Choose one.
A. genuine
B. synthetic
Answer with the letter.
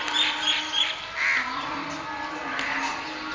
A